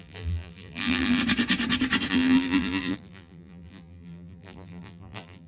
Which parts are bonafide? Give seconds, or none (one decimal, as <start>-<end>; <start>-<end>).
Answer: 1.2-2.1